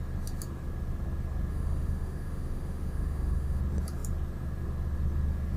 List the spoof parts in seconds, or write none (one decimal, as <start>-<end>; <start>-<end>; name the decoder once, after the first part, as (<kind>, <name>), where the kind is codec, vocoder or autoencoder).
1.5-3.6 (autoencoder, DAC-VAE)